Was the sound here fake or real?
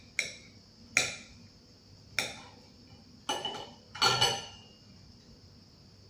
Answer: real